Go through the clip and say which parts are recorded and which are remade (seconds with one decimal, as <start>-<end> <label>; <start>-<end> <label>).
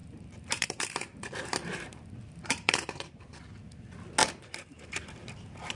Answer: 0.0-3.4 remade; 3.4-4.2 recorded; 4.2-4.9 remade; 4.9-5.8 recorded